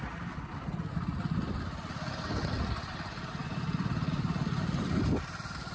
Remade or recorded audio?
remade